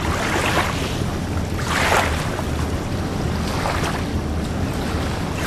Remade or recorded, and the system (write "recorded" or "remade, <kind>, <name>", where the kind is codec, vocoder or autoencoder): recorded